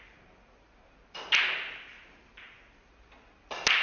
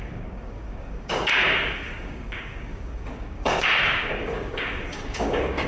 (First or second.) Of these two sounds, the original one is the first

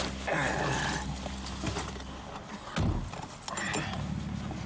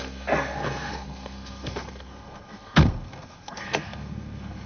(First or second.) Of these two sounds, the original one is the first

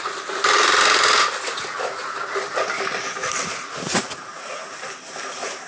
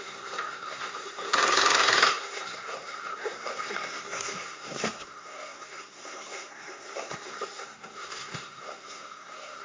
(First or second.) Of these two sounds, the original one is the first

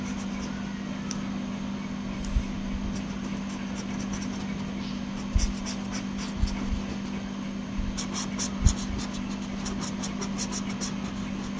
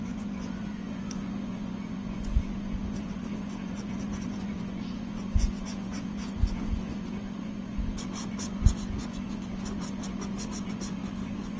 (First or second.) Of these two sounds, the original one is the first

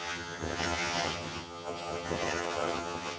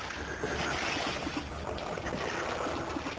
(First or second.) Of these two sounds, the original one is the second